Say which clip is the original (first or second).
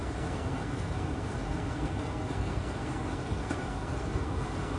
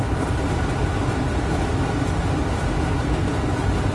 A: second